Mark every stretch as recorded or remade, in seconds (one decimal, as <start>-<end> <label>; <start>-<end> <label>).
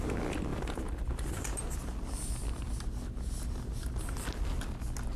0.0-0.5 recorded; 0.5-1.9 remade; 1.9-5.2 recorded